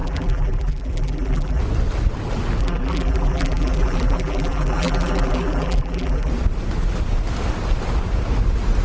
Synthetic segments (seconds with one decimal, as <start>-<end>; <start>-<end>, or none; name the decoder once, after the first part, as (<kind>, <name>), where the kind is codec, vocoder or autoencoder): 0.0-1.6 (vocoder, BigVGAN v2); 2.6-6.3